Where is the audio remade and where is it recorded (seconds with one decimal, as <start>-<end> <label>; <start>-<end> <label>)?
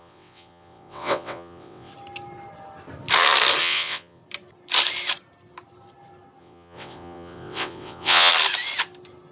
0.0-1.9 remade; 1.9-3.6 recorded; 3.6-4.2 remade; 4.2-6.4 recorded; 6.4-8.3 remade; 8.3-9.3 recorded